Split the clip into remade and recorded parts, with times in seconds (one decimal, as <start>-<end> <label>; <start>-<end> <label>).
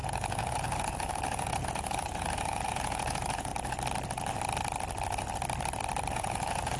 0.0-3.5 remade; 3.5-6.1 recorded; 6.1-6.8 remade